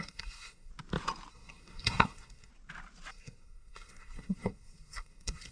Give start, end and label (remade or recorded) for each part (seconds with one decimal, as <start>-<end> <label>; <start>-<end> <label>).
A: 0.0-0.7 remade; 0.7-1.3 recorded; 1.3-2.5 remade; 2.5-3.1 recorded; 3.1-5.5 remade